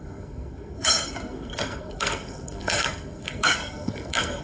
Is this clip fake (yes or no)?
yes